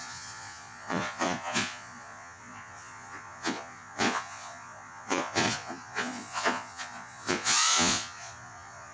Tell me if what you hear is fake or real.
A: fake